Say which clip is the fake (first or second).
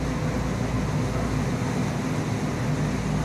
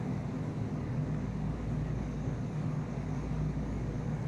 second